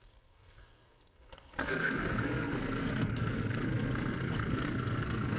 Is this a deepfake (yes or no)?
yes